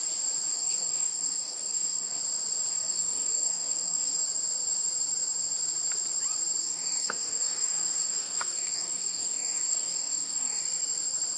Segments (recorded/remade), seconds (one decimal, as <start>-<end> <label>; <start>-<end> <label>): 0.0-0.5 recorded; 0.5-2.2 remade; 2.2-2.7 recorded; 2.7-4.2 remade; 4.2-6.6 recorded; 6.6-10.6 remade; 10.6-11.4 recorded

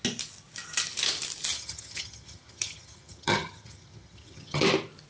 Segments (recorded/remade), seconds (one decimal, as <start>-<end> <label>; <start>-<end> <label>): 0.0-1.5 recorded; 1.5-4.6 remade; 4.6-5.1 recorded

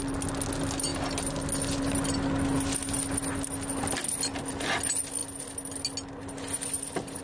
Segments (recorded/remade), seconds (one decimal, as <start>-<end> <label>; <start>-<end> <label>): 0.0-7.2 recorded

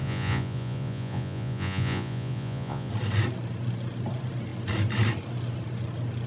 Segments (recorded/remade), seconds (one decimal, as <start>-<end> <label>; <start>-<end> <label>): 0.0-2.9 remade; 2.9-6.3 recorded

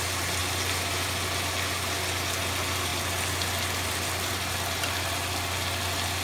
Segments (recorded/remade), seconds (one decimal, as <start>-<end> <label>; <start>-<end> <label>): 0.0-6.2 recorded

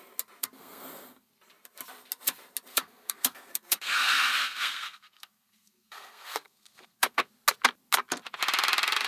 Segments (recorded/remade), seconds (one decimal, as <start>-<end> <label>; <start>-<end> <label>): 0.0-0.4 recorded; 0.4-1.3 remade; 1.3-2.7 recorded; 2.7-7.3 remade; 7.3-9.1 recorded

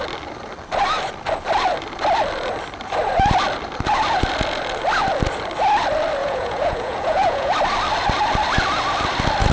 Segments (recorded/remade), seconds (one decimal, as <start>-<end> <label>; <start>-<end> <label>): 0.0-6.2 recorded; 6.2-7.5 remade; 7.5-9.5 recorded

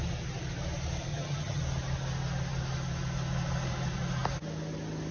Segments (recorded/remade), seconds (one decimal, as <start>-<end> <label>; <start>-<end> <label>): 0.0-1.1 recorded; 1.1-1.6 remade; 1.6-5.1 recorded